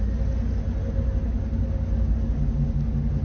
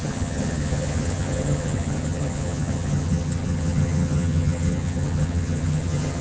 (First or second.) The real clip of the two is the first